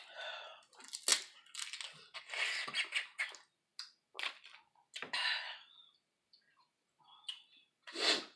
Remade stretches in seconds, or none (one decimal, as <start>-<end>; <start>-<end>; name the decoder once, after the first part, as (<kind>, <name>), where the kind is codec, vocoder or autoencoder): none